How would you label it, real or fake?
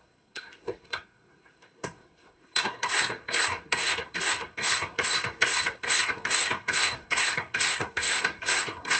fake